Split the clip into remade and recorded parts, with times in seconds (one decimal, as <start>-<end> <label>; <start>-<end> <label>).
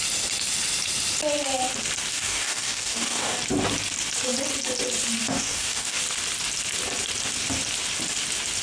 0.0-2.1 recorded; 2.1-3.4 remade; 3.4-5.2 recorded; 5.2-6.0 remade; 6.0-8.6 recorded